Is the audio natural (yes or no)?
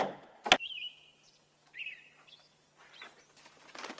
yes